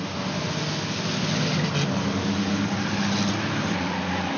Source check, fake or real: real